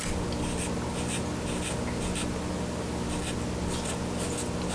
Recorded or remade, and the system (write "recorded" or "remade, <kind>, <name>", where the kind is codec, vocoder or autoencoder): recorded